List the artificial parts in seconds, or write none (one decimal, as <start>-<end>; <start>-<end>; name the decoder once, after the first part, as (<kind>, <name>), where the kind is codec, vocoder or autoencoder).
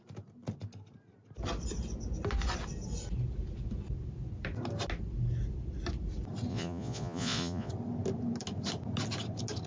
6.5-7.7 (vocoder, Vocos)